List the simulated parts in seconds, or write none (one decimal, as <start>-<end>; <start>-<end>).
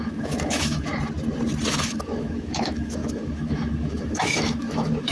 0.0-0.9; 1.7-5.1